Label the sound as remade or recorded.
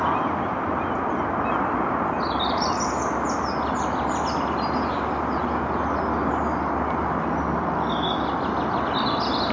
recorded